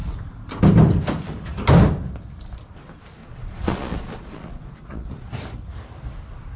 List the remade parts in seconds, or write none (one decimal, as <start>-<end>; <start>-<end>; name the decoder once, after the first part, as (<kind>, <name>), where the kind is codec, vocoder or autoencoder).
3.2-5.3 (vocoder, Vocos)